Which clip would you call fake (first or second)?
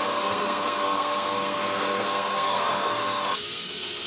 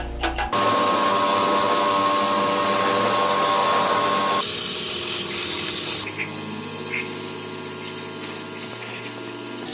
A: first